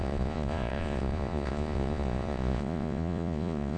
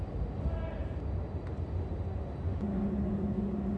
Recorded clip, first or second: second